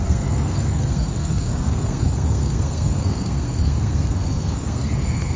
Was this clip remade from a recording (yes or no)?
yes